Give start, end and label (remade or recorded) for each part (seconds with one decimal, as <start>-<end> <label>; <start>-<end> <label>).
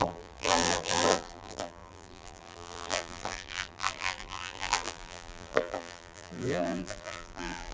0.0-7.7 remade